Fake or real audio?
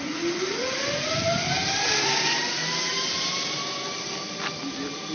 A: real